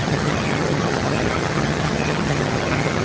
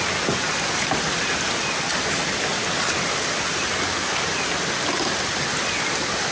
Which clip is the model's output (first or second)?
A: first